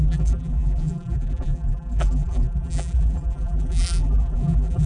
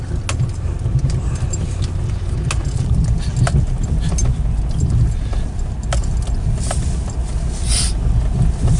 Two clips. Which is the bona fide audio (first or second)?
second